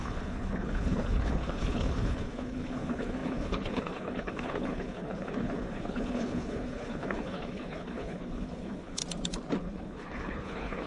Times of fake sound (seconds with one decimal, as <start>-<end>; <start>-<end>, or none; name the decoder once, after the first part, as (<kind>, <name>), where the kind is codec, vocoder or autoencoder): 0.0-9.0 (codec, HILCodec); 9.6-10.9